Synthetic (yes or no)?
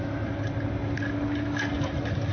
no